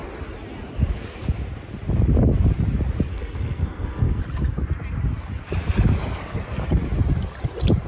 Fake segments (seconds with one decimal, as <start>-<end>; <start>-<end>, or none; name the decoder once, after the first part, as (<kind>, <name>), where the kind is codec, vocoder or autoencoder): 3.1-4.2 (codec, SNAC)